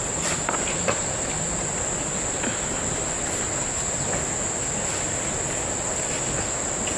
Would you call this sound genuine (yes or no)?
yes